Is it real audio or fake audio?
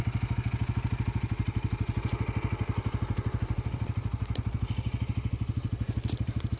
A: real